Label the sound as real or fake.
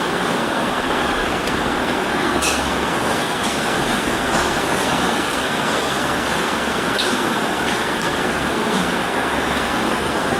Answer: fake